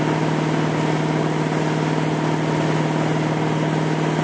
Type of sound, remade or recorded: recorded